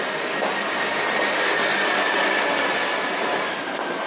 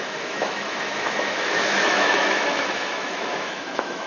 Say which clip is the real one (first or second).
first